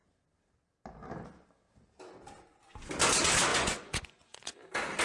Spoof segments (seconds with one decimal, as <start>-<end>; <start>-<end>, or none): 3.5-4.5